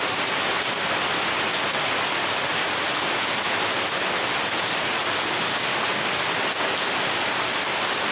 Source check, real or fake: real